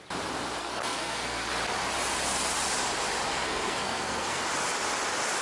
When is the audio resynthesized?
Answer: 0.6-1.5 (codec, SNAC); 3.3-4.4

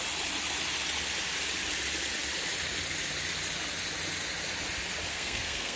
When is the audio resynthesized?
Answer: 5.1-5.8 (codec, SNAC)

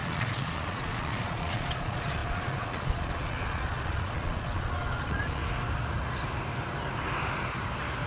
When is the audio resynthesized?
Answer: 0.0-5.4 (vocoder, Vocos)

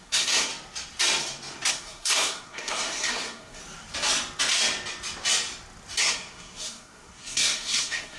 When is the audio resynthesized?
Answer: 0.0-0.5 (codec, SNAC); 1.7-3.6; 6.0-8.2

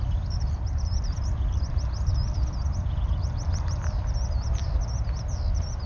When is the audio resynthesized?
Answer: none

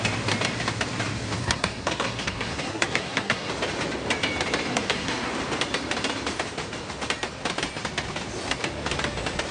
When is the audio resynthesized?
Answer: 1.4-3.5 (codec, SNAC); 4.7-5.3

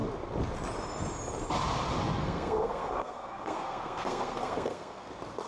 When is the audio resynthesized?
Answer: 2.2-5.1 (codec, SNAC)

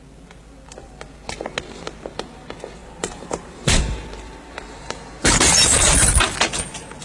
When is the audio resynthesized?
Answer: 2.8-6.1 (vocoder, BigVGAN v2)